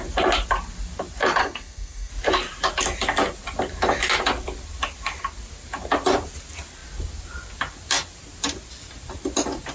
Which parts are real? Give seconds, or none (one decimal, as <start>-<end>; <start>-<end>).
0.0-1.4; 2.1-9.7